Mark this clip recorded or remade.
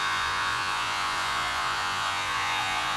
remade